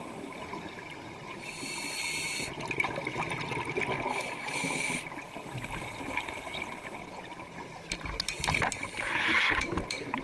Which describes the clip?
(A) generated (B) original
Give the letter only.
B